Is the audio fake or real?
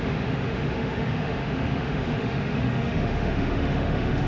fake